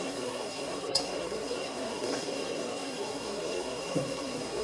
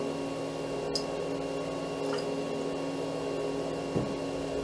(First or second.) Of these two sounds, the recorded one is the second